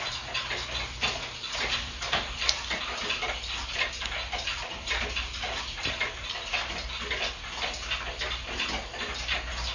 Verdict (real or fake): real